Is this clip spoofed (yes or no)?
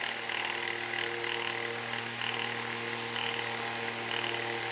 no